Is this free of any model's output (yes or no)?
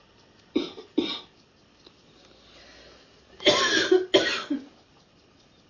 yes